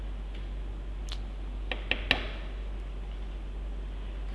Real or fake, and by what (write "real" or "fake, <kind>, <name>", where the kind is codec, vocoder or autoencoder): real